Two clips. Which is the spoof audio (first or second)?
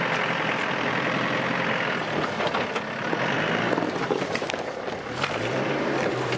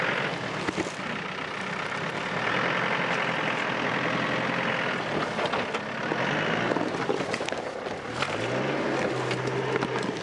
first